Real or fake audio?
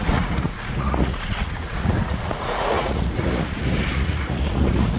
fake